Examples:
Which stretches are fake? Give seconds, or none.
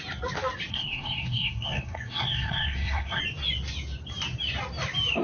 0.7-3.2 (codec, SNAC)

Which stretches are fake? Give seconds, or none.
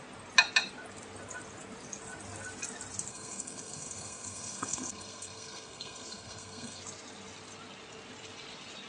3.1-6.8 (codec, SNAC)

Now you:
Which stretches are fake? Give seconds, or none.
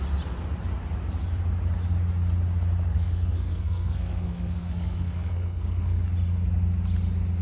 2.9-6.0 (codec, SNAC)